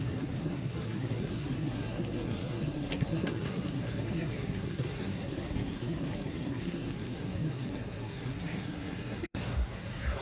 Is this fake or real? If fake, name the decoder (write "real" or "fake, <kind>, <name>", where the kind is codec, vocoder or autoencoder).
fake, codec, SNAC